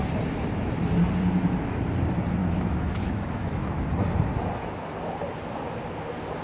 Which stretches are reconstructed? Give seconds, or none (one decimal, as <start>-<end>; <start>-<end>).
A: 2.4-3.7